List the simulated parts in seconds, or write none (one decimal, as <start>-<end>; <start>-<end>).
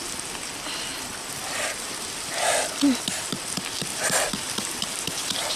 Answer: 0.9-3.2; 3.9-5.6